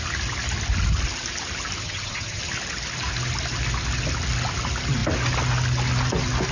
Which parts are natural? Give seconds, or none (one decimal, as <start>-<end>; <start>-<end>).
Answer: 0.0-1.8; 2.4-6.5